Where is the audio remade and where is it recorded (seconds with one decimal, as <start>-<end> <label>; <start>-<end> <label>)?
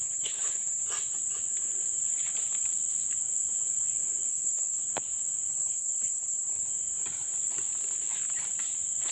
0.0-0.8 remade; 0.8-4.3 recorded; 4.3-4.8 remade; 4.8-5.5 recorded; 5.5-6.7 remade; 6.7-9.1 recorded